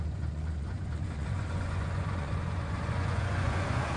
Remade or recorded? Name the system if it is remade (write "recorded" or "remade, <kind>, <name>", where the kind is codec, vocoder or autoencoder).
remade, vocoder, Vocos